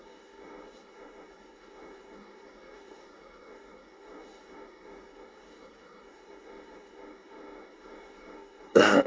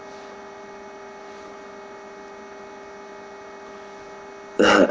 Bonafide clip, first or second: second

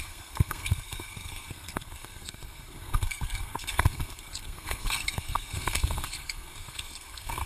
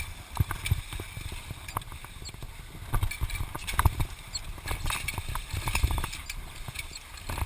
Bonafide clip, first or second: second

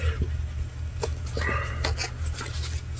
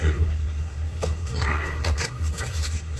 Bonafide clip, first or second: first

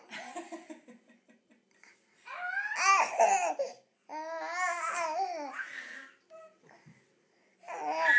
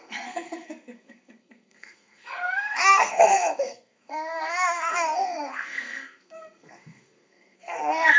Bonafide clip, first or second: first